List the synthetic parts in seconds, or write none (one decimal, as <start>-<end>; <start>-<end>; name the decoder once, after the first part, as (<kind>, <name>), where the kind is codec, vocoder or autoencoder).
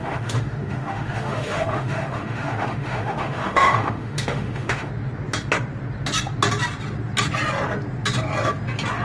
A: 0.0-4.9 (autoencoder, DAC-VAE)